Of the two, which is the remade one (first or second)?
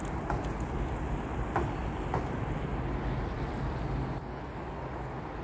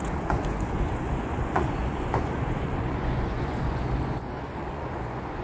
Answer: second